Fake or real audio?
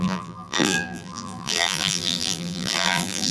fake